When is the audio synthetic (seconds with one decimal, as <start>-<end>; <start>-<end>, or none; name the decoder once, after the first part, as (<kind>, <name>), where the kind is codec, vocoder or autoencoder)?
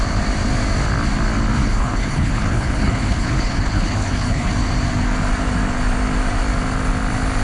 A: 1.6-4.5 (codec, HILCodec)